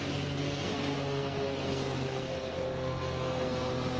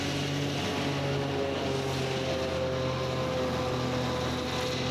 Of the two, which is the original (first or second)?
second